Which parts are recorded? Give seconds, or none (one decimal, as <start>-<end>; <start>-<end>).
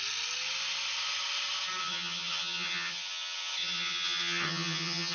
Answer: 0.0-1.8